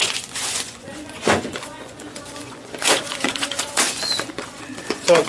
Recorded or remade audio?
remade